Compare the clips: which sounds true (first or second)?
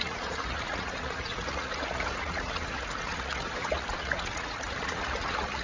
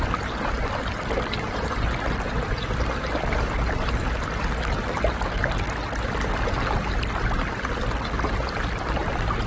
second